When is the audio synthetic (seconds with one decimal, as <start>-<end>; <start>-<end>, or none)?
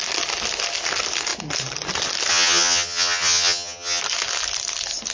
2.3-4.0